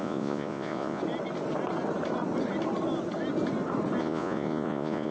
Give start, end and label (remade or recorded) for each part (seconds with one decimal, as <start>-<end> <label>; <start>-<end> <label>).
0.0-1.0 remade; 1.0-4.0 recorded; 4.0-5.1 remade